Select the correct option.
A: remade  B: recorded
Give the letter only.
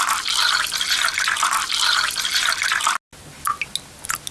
B